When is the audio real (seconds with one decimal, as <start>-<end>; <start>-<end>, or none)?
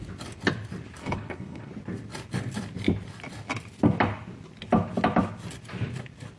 0.0-1.0; 1.7-6.4